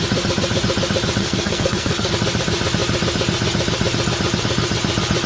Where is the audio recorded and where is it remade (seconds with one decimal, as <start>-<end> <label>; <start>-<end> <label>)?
0.0-1.2 recorded; 1.2-2.1 remade; 2.1-5.3 recorded